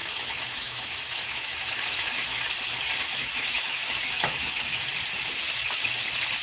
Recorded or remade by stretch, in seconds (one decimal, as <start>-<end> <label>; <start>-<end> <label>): 0.0-2.4 remade; 2.4-3.2 recorded; 3.2-4.9 remade; 4.9-6.4 recorded